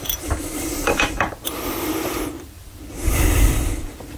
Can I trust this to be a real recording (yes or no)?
no